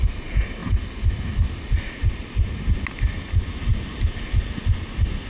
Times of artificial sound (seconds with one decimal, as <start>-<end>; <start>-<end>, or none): none